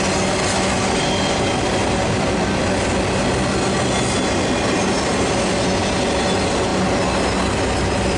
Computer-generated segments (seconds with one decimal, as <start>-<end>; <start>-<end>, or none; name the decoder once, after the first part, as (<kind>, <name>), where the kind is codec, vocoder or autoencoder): none